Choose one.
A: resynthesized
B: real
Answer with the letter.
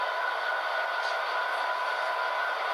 B